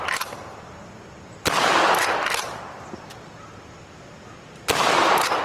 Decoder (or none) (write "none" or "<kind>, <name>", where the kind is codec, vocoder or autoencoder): none